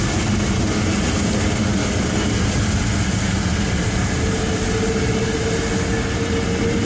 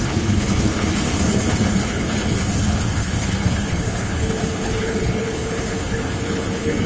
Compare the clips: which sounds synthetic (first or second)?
second